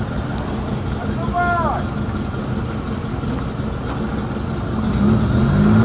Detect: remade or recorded recorded